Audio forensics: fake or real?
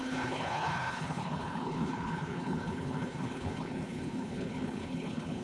fake